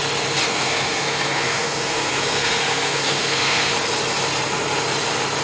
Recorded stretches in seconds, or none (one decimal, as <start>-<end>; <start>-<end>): 0.0-0.5; 3.7-5.4